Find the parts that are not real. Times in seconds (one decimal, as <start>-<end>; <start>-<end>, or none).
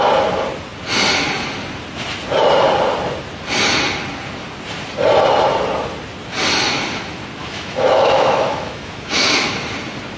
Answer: 7.4-9.5